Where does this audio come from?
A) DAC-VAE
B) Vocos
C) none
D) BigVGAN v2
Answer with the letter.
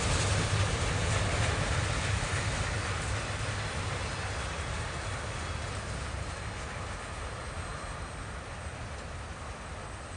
C